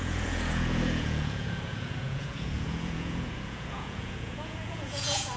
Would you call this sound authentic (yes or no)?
no